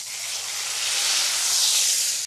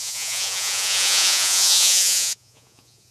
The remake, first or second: second